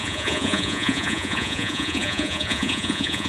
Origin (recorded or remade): remade